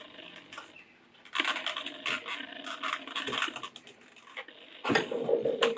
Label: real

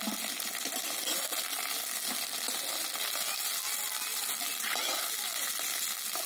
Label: real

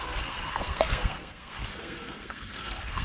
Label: fake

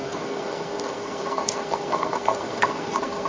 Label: fake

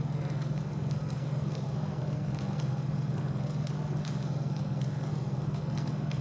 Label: fake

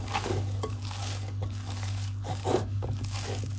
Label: fake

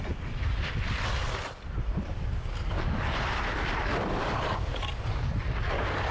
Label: real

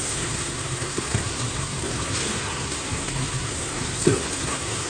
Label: fake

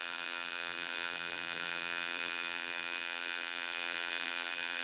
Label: fake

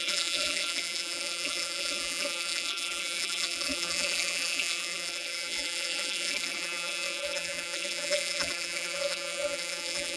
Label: fake